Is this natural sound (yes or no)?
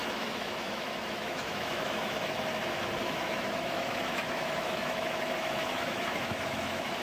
no